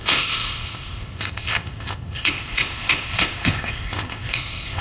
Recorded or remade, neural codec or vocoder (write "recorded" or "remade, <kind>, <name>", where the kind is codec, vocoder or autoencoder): remade, codec, ZipCodec